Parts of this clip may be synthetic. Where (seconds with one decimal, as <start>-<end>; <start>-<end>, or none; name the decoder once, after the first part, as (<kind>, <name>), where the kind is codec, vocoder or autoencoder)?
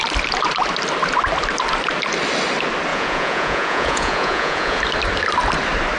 2.9-4.8 (vocoder, Vocos)